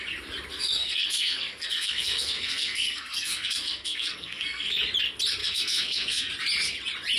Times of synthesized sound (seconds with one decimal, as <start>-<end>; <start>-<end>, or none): 0.5-4.8; 5.4-6.3